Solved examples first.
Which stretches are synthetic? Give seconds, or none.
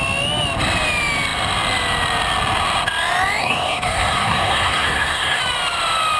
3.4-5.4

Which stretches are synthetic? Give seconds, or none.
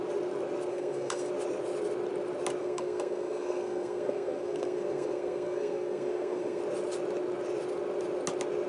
0.7-1.3; 2.6-6.6